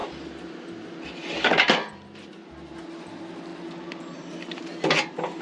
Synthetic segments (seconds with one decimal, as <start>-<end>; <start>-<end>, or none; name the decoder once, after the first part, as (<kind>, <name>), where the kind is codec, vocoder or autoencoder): 0.0-2.8 (vocoder, BigVGAN v2); 3.5-4.6